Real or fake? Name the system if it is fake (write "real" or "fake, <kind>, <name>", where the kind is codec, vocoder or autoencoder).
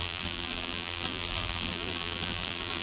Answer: fake, vocoder, BigVGAN v2